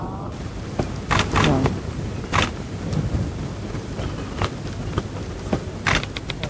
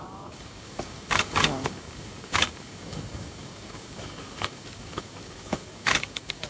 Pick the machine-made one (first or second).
second